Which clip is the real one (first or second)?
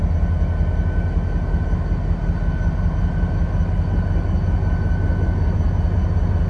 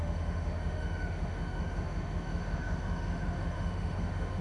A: first